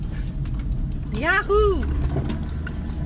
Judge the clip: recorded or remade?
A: recorded